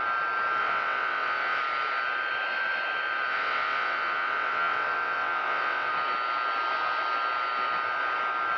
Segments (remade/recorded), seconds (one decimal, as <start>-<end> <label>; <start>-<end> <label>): 0.0-0.6 recorded; 0.6-1.6 remade; 1.6-3.3 recorded; 3.3-5.9 remade; 5.9-8.6 recorded